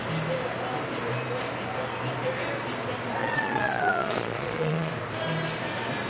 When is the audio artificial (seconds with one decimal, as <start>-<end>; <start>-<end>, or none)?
3.2-4.9